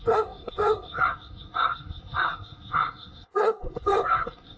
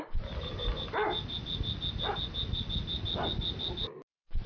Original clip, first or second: second